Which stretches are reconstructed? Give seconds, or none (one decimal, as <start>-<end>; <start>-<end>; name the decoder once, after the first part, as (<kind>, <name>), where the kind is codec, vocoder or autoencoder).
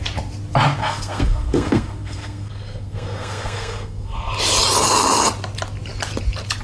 0.8-4.3 (codec, SNAC)